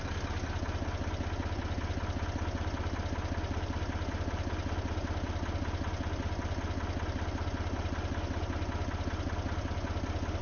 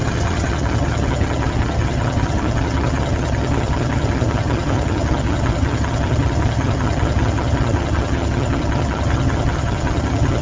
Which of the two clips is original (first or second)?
first